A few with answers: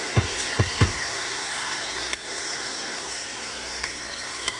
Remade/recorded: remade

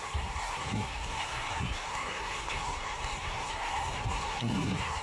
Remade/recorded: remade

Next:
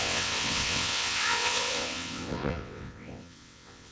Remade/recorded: remade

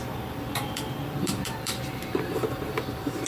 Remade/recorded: remade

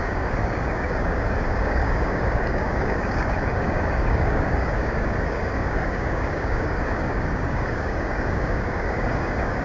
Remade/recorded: remade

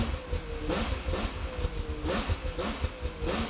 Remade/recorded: recorded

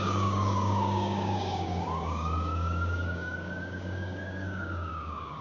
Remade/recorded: remade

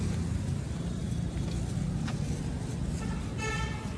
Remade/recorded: recorded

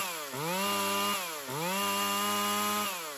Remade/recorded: recorded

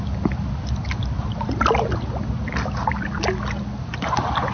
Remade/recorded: recorded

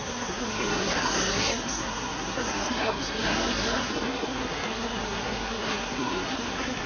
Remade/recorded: remade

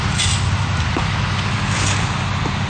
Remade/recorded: recorded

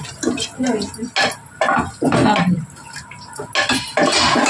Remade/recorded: recorded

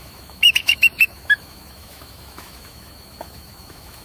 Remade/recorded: remade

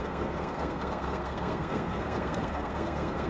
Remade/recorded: remade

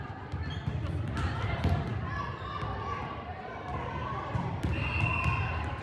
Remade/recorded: recorded